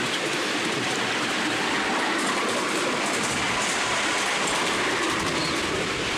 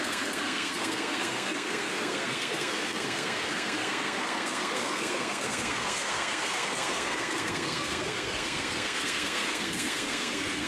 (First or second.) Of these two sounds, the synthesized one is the second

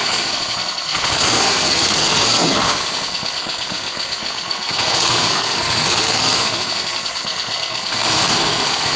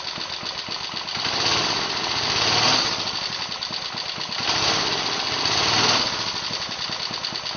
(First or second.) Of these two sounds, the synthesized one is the first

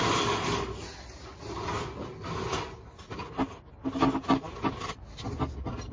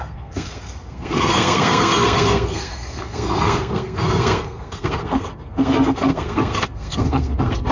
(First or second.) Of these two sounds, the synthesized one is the second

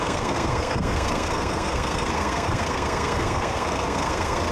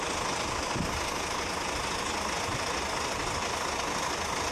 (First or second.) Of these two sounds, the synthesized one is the first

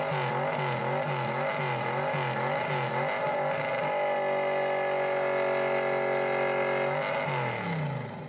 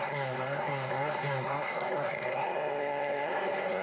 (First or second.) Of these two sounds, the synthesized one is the second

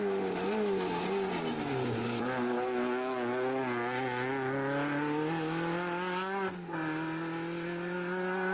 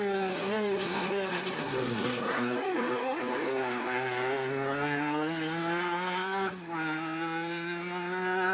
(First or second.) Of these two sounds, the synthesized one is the second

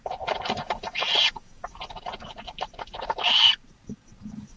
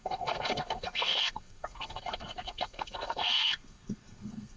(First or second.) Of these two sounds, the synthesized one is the second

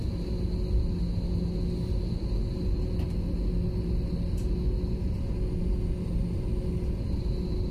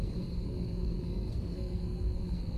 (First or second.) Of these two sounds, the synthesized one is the second